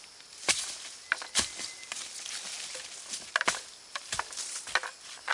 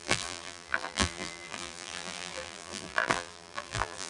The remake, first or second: second